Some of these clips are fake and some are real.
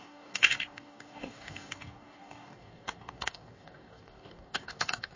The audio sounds fake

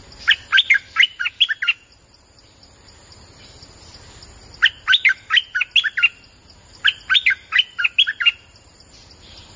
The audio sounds real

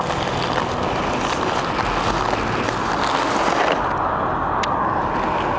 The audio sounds real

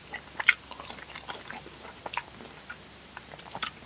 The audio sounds fake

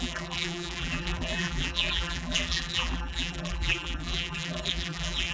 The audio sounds fake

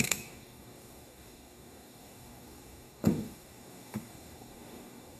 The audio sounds fake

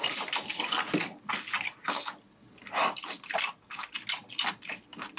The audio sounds real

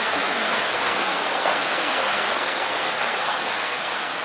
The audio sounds fake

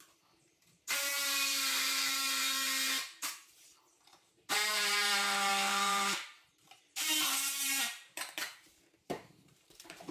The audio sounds fake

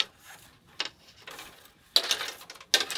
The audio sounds real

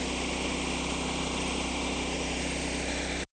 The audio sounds real